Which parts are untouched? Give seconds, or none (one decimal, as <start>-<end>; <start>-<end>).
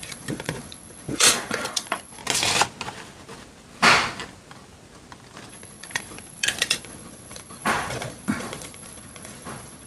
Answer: 2.2-5.5